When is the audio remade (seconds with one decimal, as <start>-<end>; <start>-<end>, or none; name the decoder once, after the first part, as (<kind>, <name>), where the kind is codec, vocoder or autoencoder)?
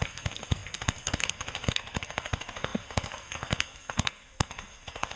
0.0-5.2 (codec, SNAC)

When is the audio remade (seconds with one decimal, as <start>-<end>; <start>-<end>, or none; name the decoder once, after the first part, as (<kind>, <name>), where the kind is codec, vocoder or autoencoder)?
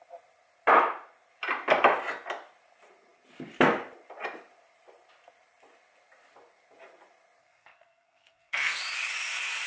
7.4-8.8 (codec, SNAC)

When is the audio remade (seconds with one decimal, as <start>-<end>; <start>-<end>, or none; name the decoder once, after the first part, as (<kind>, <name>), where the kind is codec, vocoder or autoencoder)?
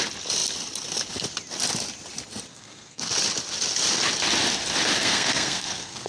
2.5-3.1 (codec, SNAC); 5.0-6.1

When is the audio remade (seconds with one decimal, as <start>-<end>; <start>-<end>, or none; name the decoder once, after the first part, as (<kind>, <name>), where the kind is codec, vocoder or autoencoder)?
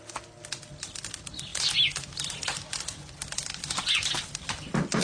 none